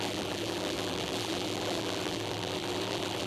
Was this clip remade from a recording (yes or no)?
yes